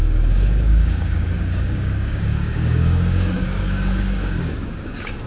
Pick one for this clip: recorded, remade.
remade